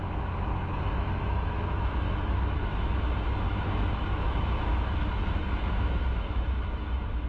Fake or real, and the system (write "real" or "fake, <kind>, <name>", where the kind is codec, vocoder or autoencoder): fake, autoencoder, DAC-VAE